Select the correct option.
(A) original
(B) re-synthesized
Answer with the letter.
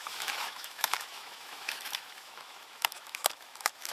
B